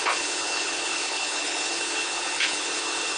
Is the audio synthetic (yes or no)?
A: yes